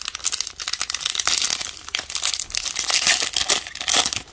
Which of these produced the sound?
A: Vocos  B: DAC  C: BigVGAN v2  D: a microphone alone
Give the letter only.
D